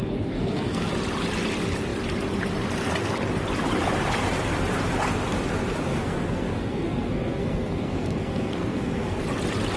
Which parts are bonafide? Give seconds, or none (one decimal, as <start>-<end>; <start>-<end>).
0.9-5.9; 9.2-9.8